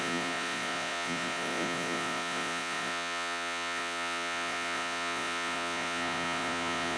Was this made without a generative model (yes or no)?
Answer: no